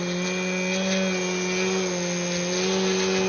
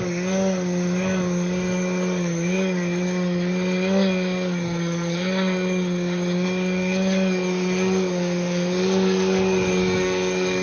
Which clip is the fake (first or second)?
second